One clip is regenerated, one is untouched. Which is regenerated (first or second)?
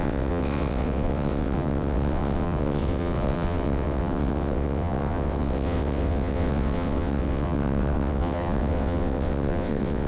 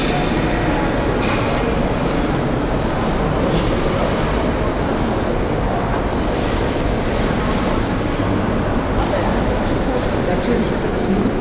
first